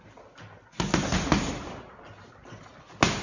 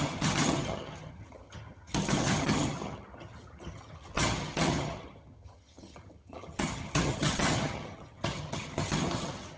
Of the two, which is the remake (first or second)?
second